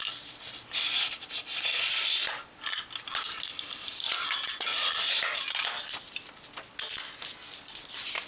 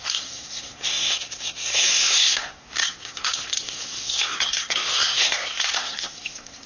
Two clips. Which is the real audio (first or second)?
first